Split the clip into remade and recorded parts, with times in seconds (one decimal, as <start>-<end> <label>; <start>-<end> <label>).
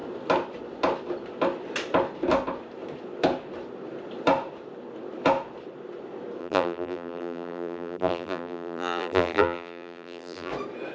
0.0-6.4 recorded; 6.4-10.5 remade; 10.5-10.9 recorded